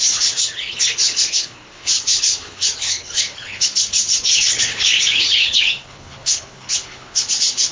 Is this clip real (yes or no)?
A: no